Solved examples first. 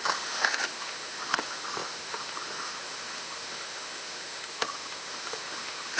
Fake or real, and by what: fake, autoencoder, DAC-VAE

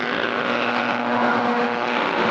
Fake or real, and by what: fake, autoencoder, DAC-VAE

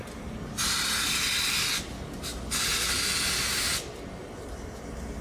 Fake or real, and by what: real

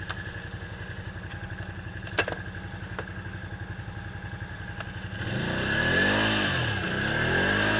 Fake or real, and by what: real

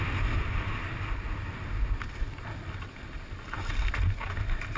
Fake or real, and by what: real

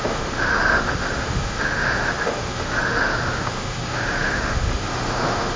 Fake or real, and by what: fake, autoencoder, DAC-VAE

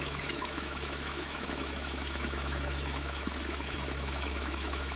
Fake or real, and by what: fake, autoencoder, DAC-VAE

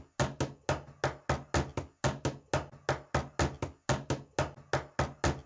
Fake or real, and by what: real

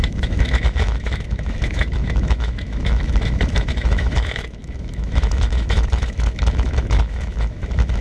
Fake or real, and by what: fake, autoencoder, DAC-VAE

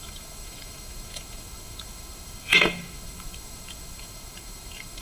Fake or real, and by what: fake, autoencoder, DAC-VAE